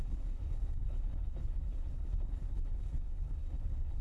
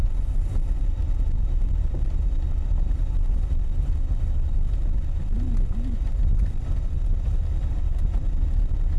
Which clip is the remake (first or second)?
first